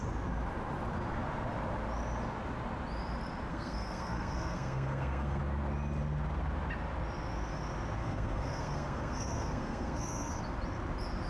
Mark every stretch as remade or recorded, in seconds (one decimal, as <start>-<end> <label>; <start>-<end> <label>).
0.0-3.5 recorded; 3.5-5.4 remade; 5.4-8.0 recorded; 8.0-10.4 remade; 10.4-11.3 recorded